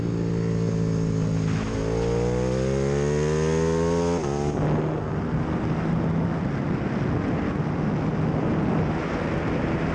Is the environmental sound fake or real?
real